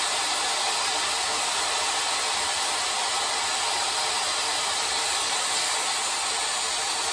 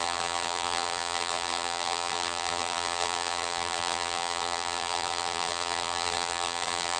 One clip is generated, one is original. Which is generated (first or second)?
second